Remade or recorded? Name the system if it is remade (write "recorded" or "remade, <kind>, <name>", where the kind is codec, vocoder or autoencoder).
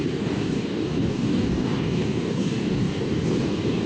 remade, codec, DAC